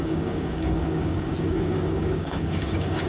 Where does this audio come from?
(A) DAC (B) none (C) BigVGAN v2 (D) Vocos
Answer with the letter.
A